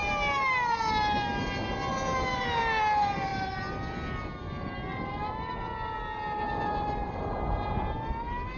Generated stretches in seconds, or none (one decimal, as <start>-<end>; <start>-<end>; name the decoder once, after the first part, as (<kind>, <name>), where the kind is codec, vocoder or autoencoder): none